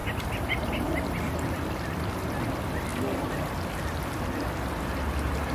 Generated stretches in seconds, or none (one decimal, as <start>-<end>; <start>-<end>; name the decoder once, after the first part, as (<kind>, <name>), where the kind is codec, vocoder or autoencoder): 0.0-2.9 (vocoder, BigVGAN v2); 4.8-5.5